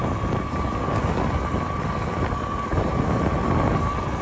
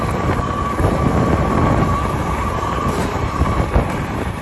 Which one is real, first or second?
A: first